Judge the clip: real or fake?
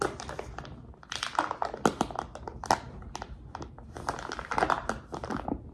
real